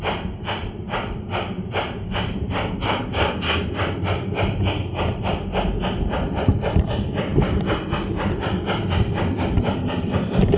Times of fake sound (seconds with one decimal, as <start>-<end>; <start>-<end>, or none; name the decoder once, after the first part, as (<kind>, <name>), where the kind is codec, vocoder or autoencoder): none